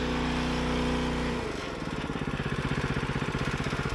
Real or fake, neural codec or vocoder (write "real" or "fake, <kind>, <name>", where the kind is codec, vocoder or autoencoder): fake, vocoder, BigVGAN v2